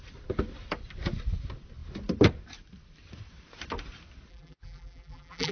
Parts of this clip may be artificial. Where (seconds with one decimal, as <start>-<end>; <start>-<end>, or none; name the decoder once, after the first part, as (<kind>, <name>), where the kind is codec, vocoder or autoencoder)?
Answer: 4.3-5.5 (vocoder, BigVGAN v2)